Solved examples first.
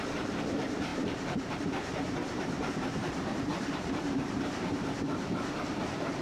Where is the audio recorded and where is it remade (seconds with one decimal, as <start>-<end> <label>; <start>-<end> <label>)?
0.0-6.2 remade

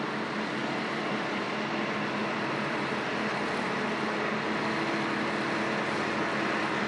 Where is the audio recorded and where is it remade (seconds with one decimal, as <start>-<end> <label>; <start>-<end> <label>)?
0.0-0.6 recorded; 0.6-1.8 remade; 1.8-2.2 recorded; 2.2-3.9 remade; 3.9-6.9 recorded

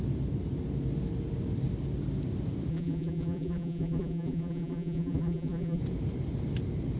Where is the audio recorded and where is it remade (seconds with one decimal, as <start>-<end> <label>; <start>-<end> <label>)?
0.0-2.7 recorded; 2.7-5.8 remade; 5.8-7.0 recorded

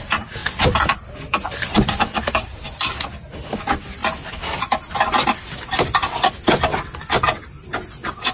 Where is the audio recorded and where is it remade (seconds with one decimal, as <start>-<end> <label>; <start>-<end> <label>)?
0.0-0.4 recorded; 0.4-2.0 remade; 2.0-4.0 recorded; 4.0-4.6 remade; 4.6-8.3 recorded